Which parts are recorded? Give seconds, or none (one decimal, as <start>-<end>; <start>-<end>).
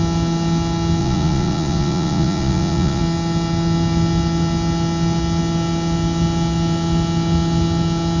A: 0.0-1.0; 3.0-8.2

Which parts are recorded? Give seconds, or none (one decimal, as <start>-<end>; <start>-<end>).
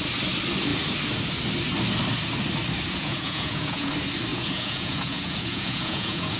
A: 0.0-3.0; 3.9-4.3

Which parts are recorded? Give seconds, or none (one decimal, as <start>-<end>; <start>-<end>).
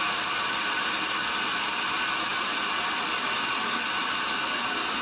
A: 0.0-5.0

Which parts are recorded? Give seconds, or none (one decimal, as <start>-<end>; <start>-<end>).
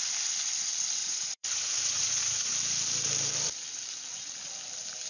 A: 0.0-1.0; 2.5-5.1